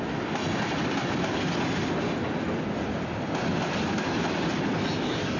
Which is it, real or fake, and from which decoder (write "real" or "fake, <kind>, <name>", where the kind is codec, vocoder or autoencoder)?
real